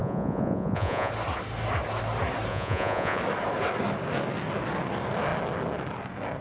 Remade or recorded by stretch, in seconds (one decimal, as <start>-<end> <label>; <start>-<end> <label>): 0.0-1.1 remade; 1.1-2.5 recorded; 2.5-3.2 remade; 3.2-6.4 recorded